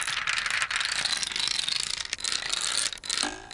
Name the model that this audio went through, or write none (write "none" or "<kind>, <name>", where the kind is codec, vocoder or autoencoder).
none